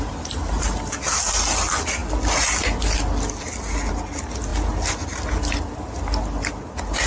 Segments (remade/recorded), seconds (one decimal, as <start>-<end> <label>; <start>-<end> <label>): 0.0-7.1 recorded